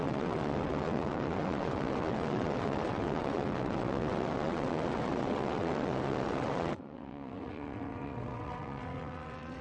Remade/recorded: remade